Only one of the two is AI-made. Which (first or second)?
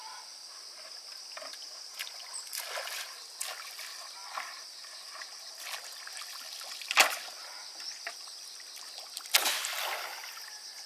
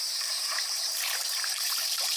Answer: second